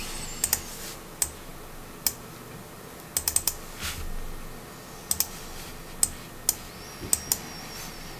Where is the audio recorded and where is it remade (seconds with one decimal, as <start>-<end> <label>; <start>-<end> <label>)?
0.0-8.2 recorded